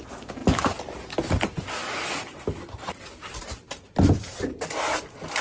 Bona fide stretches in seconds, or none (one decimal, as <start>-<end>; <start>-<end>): 0.0-5.4